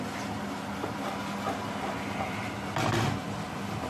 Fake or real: real